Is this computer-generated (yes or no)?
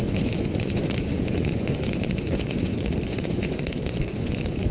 yes